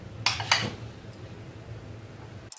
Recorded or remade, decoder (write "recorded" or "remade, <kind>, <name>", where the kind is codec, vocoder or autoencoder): recorded